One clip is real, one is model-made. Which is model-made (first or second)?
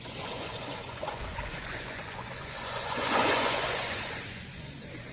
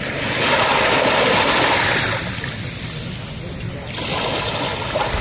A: first